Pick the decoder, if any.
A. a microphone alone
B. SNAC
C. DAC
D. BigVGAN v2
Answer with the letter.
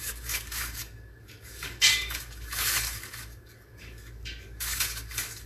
C